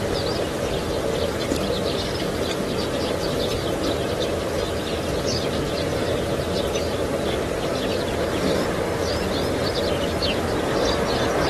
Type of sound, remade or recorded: recorded